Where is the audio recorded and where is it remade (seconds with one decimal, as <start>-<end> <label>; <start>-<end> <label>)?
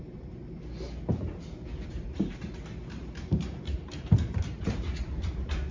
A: 0.0-0.4 remade; 0.4-1.9 recorded; 1.9-5.7 remade